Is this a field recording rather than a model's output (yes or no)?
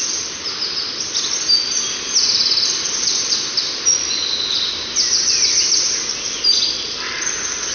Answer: yes